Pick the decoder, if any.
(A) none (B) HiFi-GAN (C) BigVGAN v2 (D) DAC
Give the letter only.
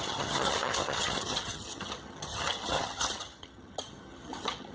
B